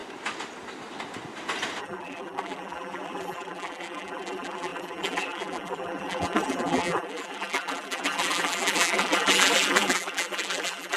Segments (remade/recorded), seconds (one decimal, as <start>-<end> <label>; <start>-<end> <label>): 0.0-1.8 recorded; 1.8-11.0 remade